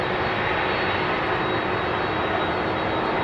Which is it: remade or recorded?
recorded